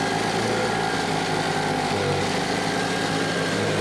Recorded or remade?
recorded